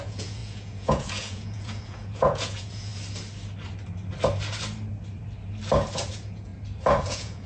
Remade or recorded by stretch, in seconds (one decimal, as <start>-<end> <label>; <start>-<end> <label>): 0.0-2.9 remade; 2.9-6.1 recorded; 6.1-6.5 remade; 6.5-7.0 recorded; 7.0-7.5 remade